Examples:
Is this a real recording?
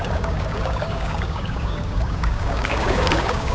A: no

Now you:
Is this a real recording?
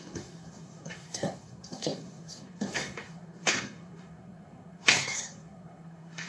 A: no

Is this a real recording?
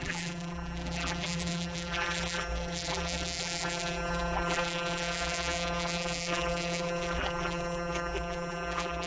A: no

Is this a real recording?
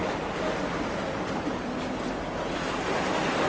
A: yes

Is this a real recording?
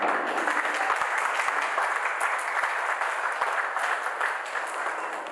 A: yes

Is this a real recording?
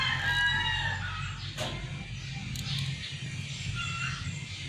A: yes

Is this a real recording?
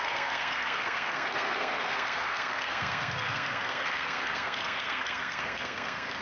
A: no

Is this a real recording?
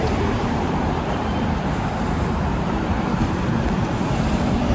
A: no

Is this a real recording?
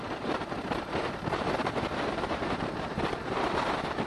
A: no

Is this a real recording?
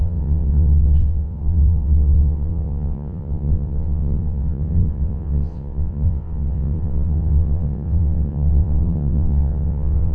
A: no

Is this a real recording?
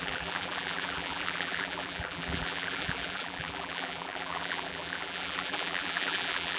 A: no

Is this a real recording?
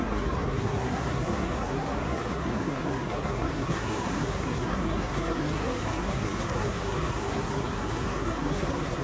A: no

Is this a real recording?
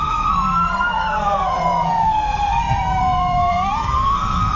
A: no